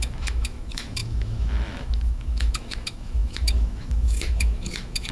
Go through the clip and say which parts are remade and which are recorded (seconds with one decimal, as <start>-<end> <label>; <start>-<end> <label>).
0.0-5.1 remade